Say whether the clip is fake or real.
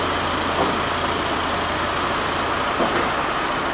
real